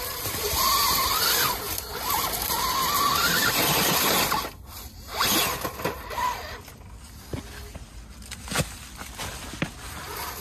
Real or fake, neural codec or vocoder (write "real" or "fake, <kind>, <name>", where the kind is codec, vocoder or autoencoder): real